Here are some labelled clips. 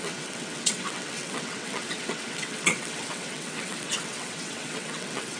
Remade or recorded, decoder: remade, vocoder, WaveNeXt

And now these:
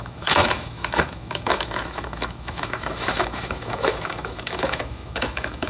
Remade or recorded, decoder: remade, autoencoder, DAC-VAE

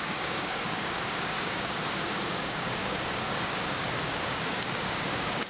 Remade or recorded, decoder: remade, codec, DAC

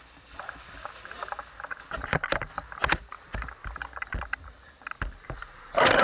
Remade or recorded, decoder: recorded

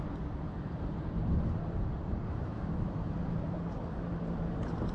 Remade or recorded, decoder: remade, vocoder, BigVGAN v2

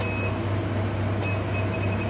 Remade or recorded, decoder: recorded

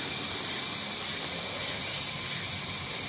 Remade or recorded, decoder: recorded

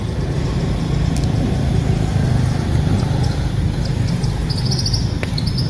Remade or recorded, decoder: recorded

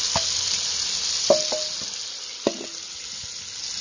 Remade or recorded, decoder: recorded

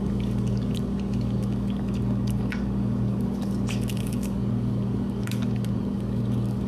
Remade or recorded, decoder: remade, codec, DAC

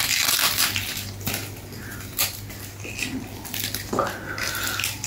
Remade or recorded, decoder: recorded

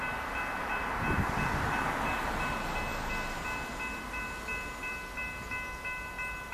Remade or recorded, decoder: recorded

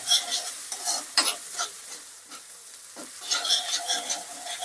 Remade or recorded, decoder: remade, vocoder, BigVGAN v2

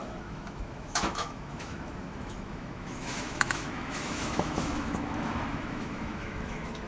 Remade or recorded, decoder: remade, autoencoder, DAC-VAE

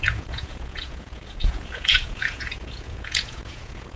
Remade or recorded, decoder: remade, vocoder, Vocos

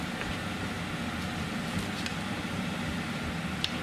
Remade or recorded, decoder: recorded